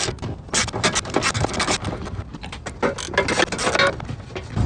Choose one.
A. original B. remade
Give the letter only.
A